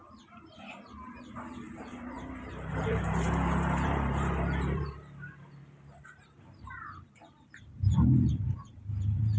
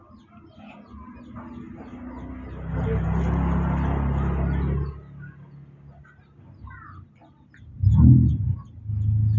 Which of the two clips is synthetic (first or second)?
first